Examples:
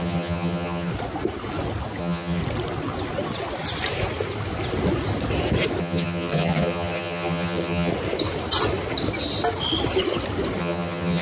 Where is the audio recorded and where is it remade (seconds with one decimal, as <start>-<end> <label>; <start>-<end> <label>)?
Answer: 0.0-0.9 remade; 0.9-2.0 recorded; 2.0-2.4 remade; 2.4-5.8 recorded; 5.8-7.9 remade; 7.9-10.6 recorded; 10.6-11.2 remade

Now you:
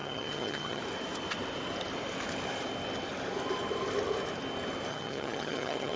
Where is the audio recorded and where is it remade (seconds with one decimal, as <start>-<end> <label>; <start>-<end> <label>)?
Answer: 0.0-0.8 remade; 0.8-4.9 recorded; 4.9-6.0 remade

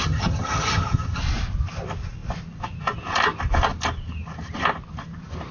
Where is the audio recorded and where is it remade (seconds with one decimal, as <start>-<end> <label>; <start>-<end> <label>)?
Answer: 0.0-1.2 remade; 1.2-5.5 recorded

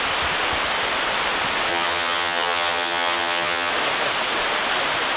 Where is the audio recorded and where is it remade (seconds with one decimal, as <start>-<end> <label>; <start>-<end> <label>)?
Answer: 0.0-1.7 recorded; 1.7-3.7 remade; 3.7-5.2 recorded

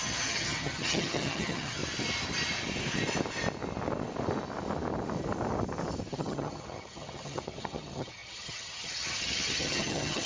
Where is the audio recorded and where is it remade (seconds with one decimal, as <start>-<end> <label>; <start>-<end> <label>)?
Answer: 0.0-1.8 remade; 1.8-6.1 recorded; 6.1-10.3 remade

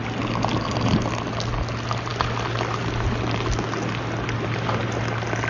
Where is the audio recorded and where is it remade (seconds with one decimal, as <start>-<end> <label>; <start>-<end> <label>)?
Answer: 0.0-5.5 recorded

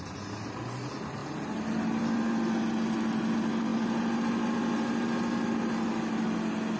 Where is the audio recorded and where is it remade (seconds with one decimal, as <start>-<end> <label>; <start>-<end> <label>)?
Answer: 0.0-6.8 recorded

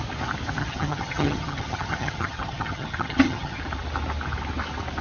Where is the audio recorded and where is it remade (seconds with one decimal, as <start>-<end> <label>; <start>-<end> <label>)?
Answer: 0.0-0.6 recorded; 0.6-3.6 remade; 3.6-5.0 recorded